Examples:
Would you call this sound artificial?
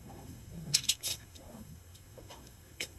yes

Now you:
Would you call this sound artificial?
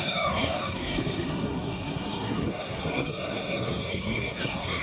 yes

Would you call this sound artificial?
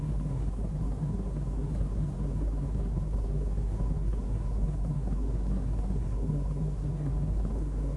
yes